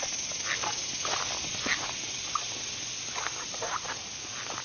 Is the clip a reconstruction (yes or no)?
no